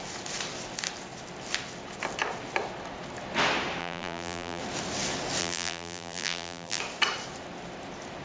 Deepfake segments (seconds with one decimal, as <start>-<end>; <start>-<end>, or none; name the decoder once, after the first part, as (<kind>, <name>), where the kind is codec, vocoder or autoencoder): 3.8-4.6 (vocoder, BigVGAN v2); 5.4-6.8